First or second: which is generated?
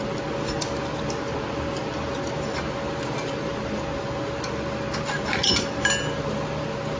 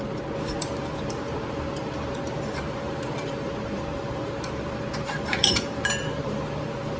second